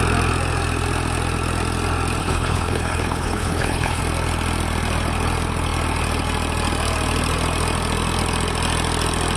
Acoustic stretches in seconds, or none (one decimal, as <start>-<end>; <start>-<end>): 0.0-2.2; 4.0-9.4